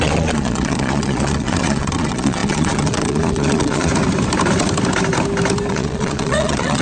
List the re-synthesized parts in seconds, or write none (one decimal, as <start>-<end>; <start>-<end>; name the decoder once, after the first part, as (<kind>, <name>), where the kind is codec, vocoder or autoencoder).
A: 0.0-3.9 (vocoder, Vocos); 5.7-6.8